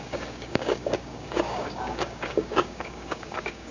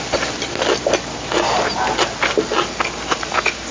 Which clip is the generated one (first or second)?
first